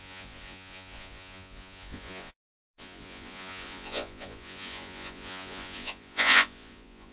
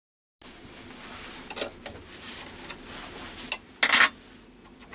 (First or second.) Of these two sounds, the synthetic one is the first